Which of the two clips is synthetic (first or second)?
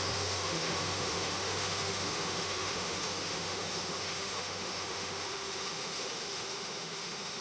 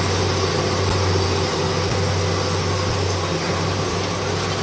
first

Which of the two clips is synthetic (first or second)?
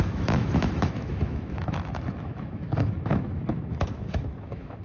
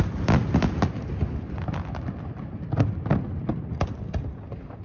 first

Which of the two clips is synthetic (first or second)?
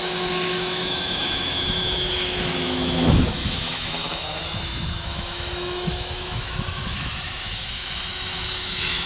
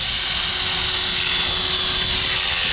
first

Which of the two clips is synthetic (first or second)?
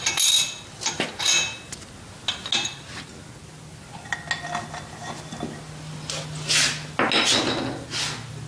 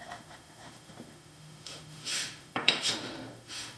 second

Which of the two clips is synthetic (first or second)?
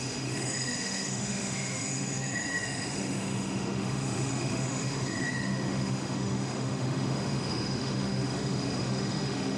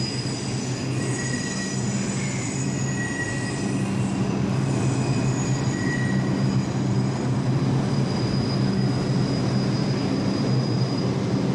first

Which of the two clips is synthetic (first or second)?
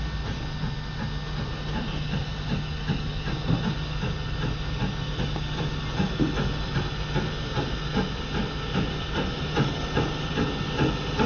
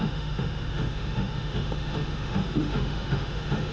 second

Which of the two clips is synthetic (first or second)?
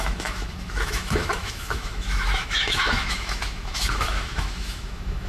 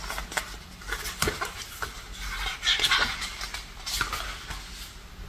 first